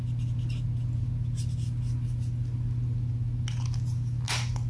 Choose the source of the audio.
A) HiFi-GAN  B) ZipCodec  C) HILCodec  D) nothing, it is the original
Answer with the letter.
D